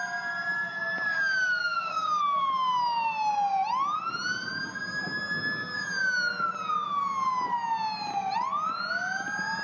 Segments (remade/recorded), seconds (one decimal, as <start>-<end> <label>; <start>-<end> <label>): 0.0-1.6 recorded; 1.6-2.2 remade; 2.2-9.6 recorded